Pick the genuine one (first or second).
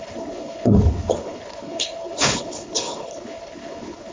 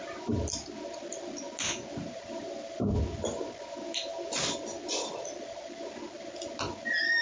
second